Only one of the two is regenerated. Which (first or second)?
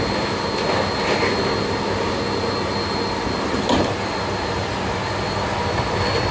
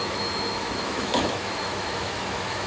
second